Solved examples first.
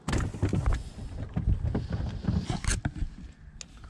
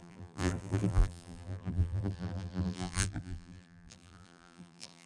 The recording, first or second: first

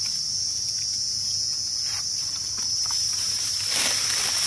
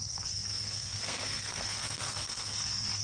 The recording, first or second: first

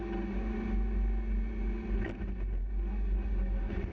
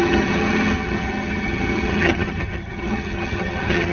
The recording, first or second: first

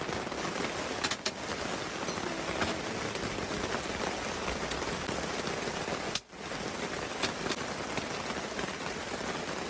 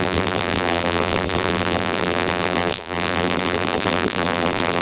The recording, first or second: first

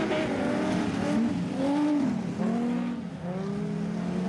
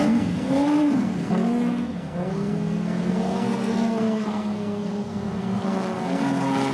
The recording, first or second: first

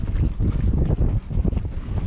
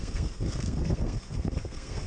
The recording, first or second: first